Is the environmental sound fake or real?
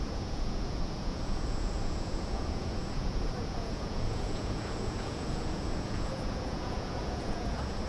fake